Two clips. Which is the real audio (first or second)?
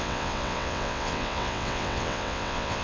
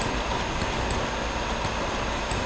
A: second